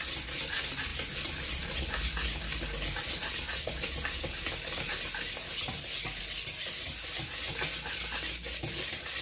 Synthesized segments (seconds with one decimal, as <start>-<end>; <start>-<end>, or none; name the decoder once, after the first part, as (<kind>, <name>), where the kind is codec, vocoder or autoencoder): none